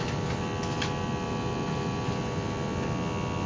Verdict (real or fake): real